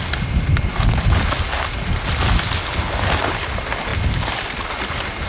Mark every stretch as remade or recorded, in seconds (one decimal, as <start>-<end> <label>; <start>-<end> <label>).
0.0-5.3 recorded